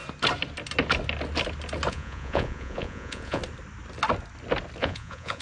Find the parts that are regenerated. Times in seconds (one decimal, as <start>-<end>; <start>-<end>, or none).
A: 1.9-3.4; 4.8-5.4

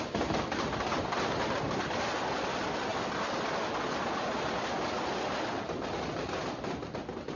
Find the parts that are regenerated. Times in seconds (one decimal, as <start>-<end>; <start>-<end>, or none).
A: none

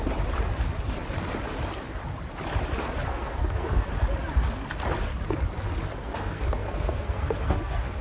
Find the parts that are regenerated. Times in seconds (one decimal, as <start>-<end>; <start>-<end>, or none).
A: 3.1-3.9; 6.0-8.0

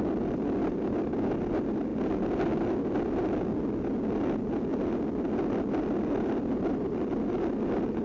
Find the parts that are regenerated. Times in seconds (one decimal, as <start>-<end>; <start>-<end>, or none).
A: none

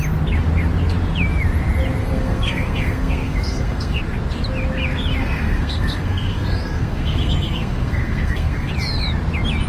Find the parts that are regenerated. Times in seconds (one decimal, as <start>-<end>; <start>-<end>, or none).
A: 2.0-4.0; 5.2-8.7